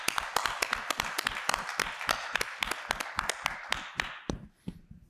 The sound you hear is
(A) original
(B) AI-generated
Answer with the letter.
A